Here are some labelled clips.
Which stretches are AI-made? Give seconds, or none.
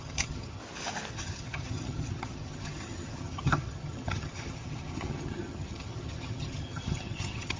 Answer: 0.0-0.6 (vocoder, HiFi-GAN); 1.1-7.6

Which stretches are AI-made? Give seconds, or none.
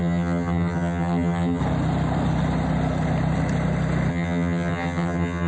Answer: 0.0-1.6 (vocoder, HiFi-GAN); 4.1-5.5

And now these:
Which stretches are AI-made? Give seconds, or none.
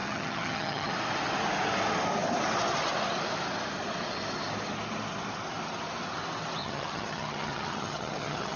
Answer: 0.0-0.9 (vocoder, HiFi-GAN); 6.6-8.6